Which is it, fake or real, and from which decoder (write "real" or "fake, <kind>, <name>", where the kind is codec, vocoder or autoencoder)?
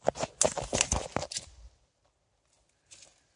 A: real